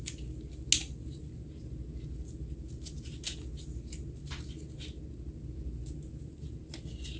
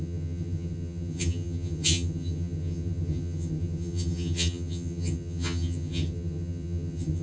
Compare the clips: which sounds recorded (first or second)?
first